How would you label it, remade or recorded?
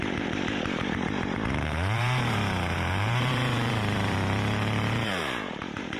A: remade